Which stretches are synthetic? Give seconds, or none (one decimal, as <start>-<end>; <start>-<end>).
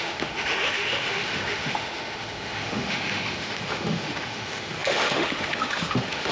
0.0-6.3